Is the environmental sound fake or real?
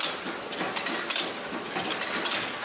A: real